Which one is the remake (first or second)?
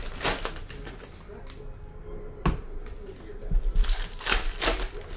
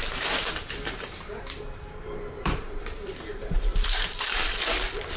second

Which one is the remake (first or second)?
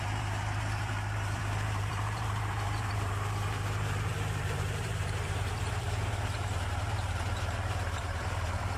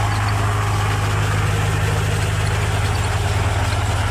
first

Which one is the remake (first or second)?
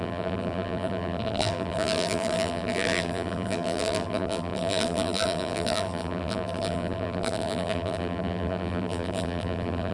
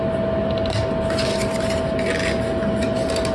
first